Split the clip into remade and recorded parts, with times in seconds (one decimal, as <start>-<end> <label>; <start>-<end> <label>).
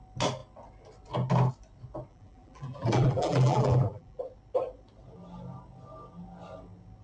0.0-2.1 recorded; 2.1-4.2 remade; 4.2-7.0 recorded